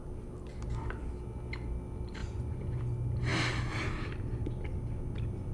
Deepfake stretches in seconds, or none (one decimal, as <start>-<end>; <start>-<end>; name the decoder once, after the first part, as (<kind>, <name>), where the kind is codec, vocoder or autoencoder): 2.2-2.8 (vocoder, Vocos)